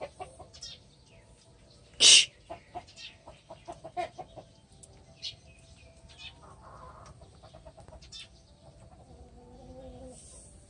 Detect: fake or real real